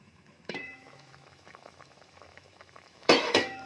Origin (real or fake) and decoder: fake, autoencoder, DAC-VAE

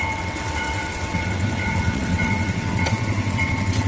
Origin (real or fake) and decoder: fake, vocoder, WaveNeXt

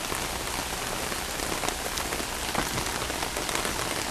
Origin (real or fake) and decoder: real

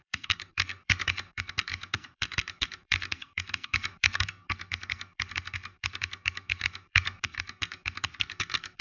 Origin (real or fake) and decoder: fake, codec, SNAC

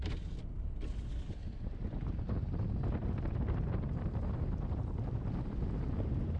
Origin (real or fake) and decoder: real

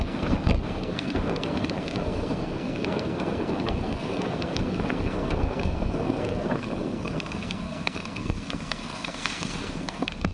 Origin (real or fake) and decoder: fake, codec, SNAC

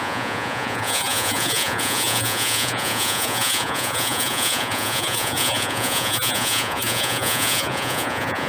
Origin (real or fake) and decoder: fake, vocoder, Vocos